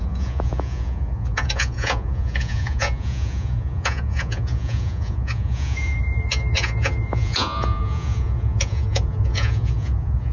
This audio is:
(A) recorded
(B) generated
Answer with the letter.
B